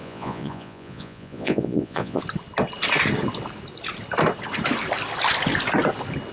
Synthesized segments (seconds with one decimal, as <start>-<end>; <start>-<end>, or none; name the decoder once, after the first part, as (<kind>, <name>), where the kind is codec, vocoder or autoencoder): 0.0-2.2 (vocoder, Vocos)